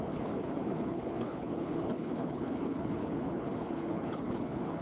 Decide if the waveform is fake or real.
fake